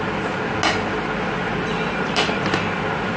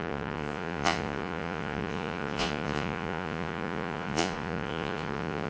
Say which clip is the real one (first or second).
first